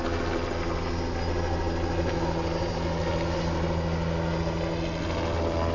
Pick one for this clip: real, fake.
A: real